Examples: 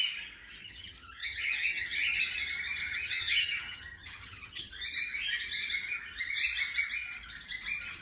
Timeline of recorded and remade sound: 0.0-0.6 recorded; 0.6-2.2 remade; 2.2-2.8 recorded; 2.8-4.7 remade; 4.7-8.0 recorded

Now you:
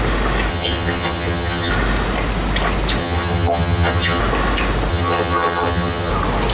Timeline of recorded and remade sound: 0.0-0.5 recorded; 0.5-1.7 remade; 1.7-3.0 recorded; 3.0-4.2 remade; 4.2-4.9 recorded; 4.9-6.1 remade; 6.1-6.5 recorded